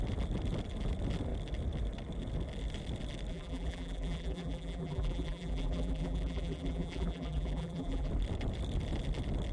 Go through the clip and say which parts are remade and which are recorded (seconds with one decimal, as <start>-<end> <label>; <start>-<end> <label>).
0.0-3.3 recorded; 3.3-8.1 remade; 8.1-9.5 recorded